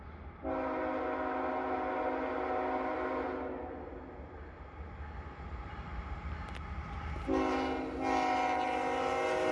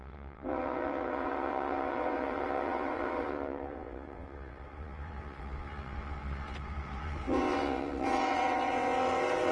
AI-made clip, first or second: second